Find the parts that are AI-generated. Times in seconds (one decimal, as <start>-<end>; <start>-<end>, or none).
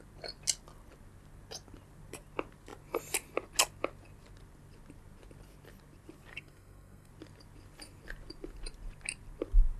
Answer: 6.3-7.1